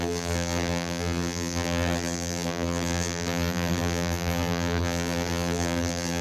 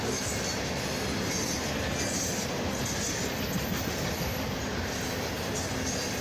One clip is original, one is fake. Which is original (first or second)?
second